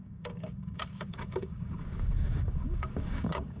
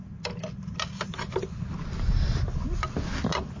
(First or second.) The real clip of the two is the second